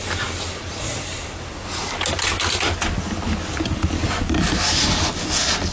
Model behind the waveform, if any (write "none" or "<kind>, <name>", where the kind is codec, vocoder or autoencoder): none